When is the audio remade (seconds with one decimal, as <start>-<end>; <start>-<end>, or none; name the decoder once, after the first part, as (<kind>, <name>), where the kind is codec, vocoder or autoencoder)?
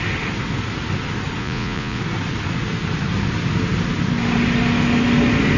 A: 1.4-2.0 (vocoder, Vocos)